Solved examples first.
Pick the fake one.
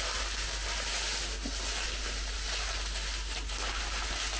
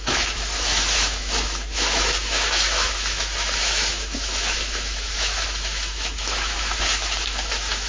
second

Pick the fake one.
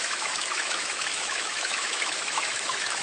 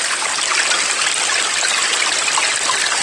first